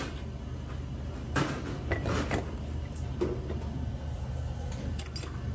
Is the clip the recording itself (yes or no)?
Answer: yes